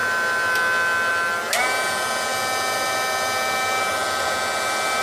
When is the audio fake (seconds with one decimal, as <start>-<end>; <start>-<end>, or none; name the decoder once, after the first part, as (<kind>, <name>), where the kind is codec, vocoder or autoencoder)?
none